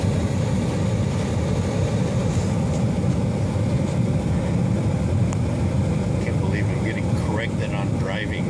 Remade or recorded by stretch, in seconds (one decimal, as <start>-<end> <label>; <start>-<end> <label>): 0.0-8.5 recorded